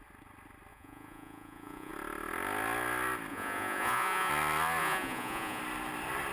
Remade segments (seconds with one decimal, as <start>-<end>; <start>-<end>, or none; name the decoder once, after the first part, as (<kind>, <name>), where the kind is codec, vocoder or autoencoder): 0.7-1.9 (vocoder, Vocos); 3.3-4.3; 4.8-5.6